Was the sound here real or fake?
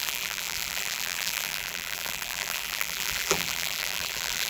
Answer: fake